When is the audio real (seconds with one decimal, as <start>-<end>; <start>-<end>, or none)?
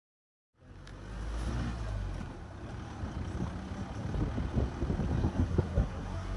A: 0.0-5.2